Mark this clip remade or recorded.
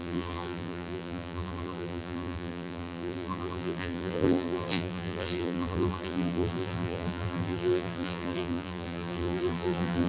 remade